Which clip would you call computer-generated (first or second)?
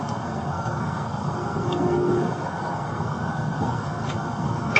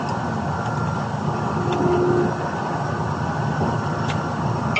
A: first